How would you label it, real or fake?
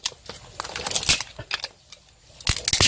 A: real